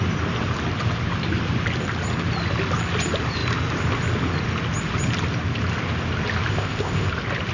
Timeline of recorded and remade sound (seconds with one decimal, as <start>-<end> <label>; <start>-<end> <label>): 0.0-6.5 recorded; 6.5-7.1 remade; 7.1-7.5 recorded